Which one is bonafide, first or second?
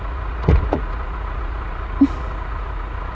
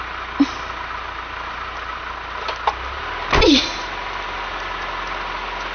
second